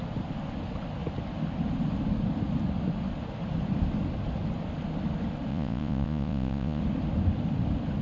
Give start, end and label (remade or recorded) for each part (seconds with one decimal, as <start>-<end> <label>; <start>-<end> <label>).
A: 0.0-5.5 recorded; 5.5-6.8 remade; 6.8-8.0 recorded